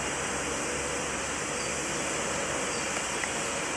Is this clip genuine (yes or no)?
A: yes